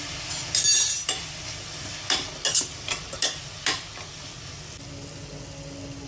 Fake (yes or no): no